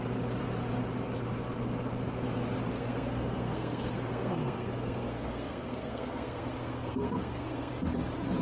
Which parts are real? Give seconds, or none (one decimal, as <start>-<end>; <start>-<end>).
0.0-2.7; 7.7-8.4